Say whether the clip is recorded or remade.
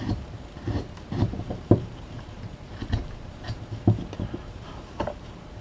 remade